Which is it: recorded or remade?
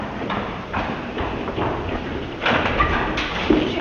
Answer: remade